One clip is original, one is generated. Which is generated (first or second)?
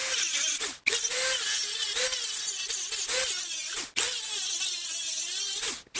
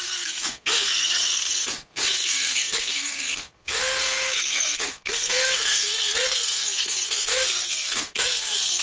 second